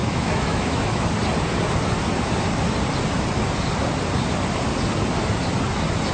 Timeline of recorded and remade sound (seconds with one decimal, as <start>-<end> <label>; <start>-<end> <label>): 0.0-1.1 remade; 1.1-6.1 recorded